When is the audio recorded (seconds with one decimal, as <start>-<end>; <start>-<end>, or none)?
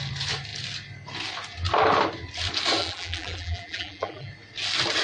0.0-2.8; 4.3-5.0